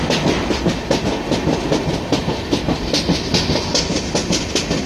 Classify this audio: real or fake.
real